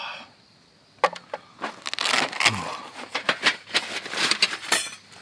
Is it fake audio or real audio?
real